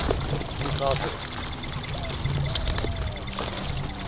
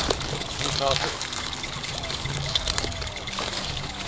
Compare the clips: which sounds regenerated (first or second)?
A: second